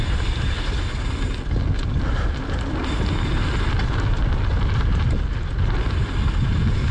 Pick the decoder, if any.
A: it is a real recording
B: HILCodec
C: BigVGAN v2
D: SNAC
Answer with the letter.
A